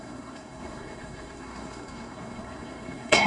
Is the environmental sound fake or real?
fake